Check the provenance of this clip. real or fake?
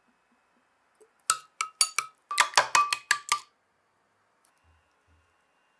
real